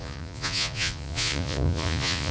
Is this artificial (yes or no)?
yes